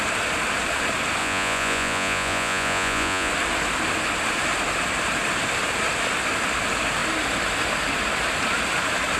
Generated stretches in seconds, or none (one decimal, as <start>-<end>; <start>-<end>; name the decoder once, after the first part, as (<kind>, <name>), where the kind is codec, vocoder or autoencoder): 1.2-3.3 (vocoder, Vocos)